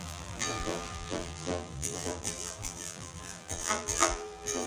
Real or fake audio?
fake